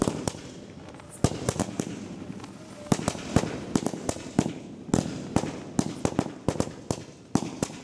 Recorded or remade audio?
recorded